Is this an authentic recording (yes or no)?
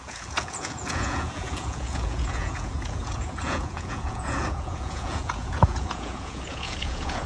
no